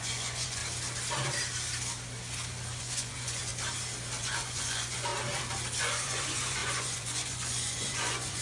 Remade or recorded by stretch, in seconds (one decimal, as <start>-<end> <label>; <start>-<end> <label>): 0.0-0.6 remade; 0.6-2.8 recorded; 2.8-3.5 remade; 3.5-4.2 recorded; 4.2-5.1 remade; 5.1-5.8 recorded; 5.8-8.4 remade